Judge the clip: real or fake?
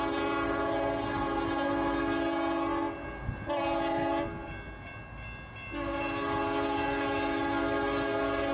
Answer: real